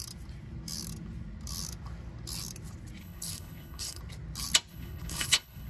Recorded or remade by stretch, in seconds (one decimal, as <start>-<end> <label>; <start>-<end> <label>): 0.0-3.0 recorded; 3.0-4.0 remade; 4.0-4.7 recorded; 4.7-5.7 remade